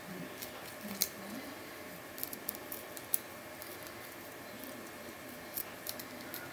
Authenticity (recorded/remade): remade